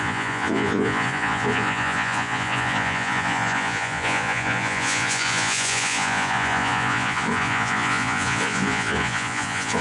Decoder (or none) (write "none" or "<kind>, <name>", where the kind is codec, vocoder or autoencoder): vocoder, Vocos